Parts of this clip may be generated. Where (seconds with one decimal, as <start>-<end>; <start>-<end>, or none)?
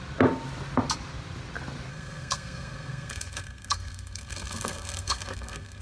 1.9-5.8